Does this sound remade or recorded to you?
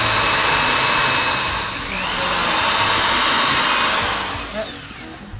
recorded